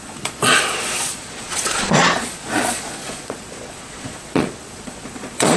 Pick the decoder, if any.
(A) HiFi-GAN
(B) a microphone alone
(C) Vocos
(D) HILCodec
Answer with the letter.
C